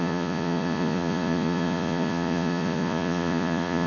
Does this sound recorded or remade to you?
remade